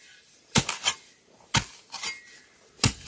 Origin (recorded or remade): recorded